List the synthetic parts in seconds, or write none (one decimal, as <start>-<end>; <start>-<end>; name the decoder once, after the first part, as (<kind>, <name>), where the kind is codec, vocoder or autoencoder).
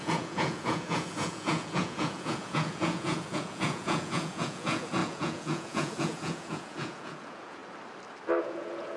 0.0-7.6 (vocoder, Vocos); 8.4-9.0